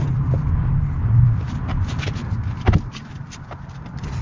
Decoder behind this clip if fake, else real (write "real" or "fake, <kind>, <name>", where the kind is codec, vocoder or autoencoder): real